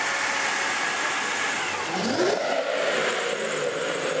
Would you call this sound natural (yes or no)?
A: no